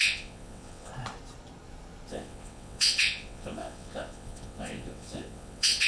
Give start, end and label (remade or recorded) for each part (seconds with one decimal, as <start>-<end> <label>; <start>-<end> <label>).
0.0-0.9 remade; 0.9-2.1 recorded; 2.1-5.9 remade